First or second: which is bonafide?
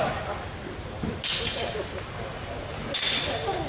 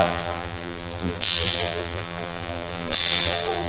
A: first